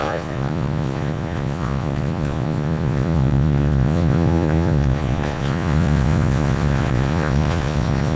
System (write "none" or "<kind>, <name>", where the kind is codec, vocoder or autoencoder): vocoder, Vocos